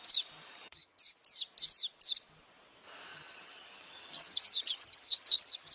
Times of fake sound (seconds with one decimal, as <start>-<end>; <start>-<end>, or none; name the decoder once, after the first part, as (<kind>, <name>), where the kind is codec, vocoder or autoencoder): 0.4-1.0 (vocoder, HiFi-GAN); 3.1-5.7